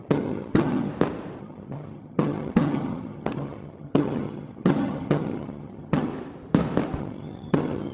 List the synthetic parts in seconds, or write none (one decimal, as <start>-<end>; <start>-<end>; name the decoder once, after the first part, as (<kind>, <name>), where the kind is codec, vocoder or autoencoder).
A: 0.0-0.9 (vocoder, HiFi-GAN); 1.4-6.1; 7.0-7.9